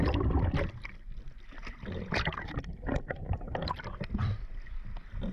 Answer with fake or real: real